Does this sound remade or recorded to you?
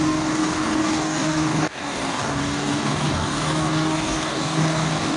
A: remade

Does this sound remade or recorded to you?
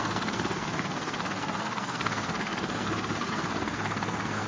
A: remade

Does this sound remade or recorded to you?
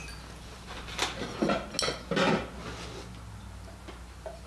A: recorded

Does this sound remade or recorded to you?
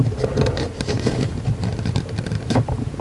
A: remade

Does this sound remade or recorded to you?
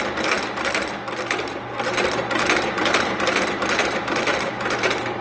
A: recorded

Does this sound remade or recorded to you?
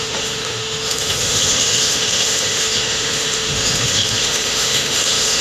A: remade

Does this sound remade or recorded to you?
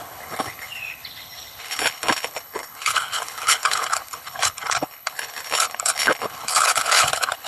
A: remade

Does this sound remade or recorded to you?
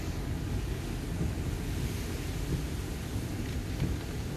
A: recorded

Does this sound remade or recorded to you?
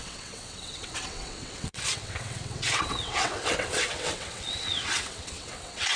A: remade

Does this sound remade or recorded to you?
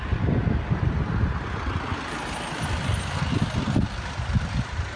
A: recorded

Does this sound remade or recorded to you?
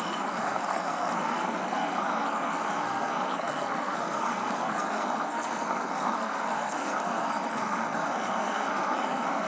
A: remade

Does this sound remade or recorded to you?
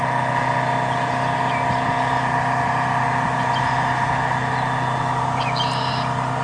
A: recorded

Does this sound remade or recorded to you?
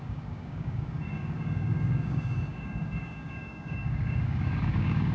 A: remade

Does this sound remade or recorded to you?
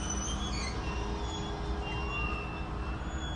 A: recorded